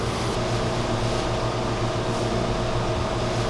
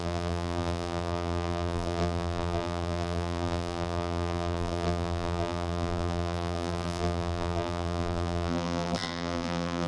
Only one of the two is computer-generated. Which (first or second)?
second